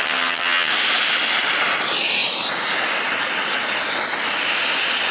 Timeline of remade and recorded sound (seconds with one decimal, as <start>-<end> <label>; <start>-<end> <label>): 0.0-0.7 remade; 0.7-5.1 recorded